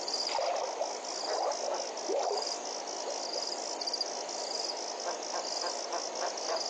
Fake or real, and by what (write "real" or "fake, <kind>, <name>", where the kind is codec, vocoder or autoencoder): real